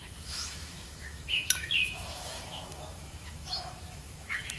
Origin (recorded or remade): remade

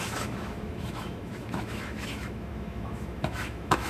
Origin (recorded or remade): remade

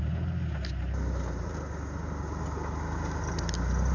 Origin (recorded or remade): recorded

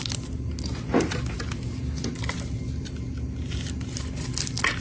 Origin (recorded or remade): recorded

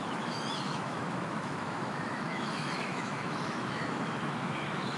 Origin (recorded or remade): remade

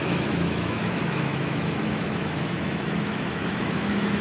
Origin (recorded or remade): remade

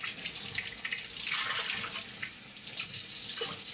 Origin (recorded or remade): recorded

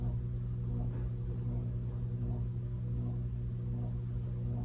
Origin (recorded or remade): recorded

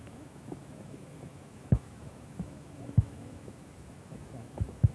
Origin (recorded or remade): remade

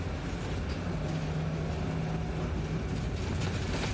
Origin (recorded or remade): recorded